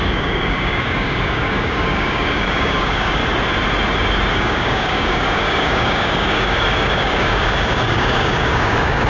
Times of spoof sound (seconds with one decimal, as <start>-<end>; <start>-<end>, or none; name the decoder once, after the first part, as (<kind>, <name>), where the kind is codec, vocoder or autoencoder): 0.0-3.2 (codec, DAC); 4.3-9.1